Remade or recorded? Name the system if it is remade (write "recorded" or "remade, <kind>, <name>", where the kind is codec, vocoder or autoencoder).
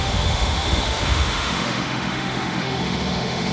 remade, autoencoder, DAC-VAE